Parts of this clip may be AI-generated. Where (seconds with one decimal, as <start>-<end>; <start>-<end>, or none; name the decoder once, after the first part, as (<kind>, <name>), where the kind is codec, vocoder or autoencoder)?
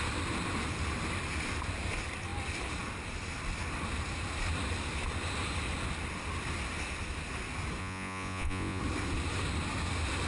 7.8-8.8 (vocoder, Vocos)